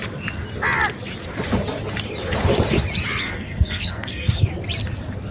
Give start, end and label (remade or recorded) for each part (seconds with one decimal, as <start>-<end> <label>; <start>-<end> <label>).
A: 0.0-3.2 recorded; 3.2-4.5 remade; 4.5-5.3 recorded